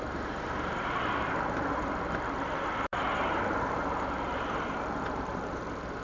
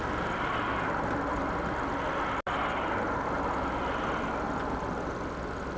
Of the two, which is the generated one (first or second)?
first